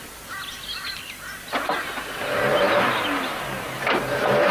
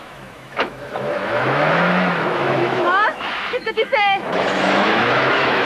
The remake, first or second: second